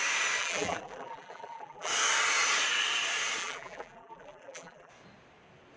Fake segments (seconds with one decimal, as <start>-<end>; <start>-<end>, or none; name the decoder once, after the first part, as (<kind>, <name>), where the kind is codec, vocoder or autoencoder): 0.4-1.9 (vocoder, BigVGAN v2); 3.4-4.9